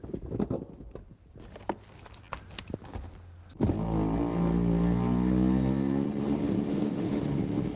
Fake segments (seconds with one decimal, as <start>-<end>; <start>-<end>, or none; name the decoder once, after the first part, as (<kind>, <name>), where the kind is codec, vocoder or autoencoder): 6.7-7.2 (autoencoder, DAC-VAE)